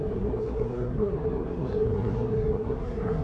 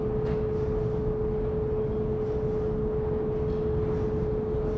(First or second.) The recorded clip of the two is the second